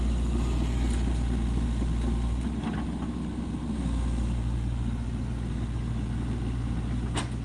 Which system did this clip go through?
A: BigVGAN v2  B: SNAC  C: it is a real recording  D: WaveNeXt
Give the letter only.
C